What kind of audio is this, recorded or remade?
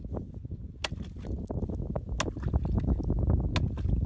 recorded